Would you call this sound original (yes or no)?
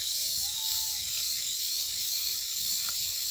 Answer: no